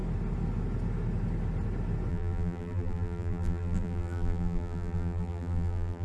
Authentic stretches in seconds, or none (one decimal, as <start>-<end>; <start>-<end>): 0.0-2.1